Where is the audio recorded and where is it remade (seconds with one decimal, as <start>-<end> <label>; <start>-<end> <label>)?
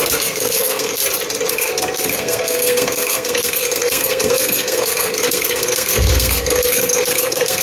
0.0-1.0 remade; 1.0-1.5 recorded; 1.5-7.6 remade